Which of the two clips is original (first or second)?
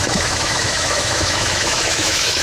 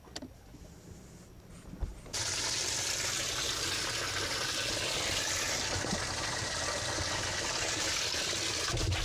second